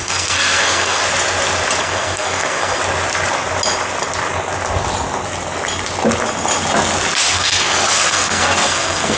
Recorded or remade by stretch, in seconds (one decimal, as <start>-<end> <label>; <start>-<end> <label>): 0.0-1.0 remade; 1.0-1.8 recorded; 1.8-2.8 remade; 2.8-7.3 recorded; 7.3-9.2 remade